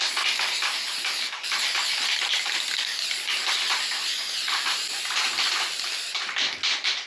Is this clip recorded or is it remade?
recorded